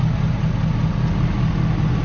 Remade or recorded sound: recorded